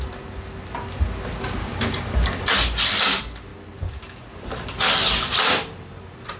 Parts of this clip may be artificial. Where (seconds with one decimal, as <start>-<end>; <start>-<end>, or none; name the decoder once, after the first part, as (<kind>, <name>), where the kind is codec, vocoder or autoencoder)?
1.6-2.4 (codec, DAC)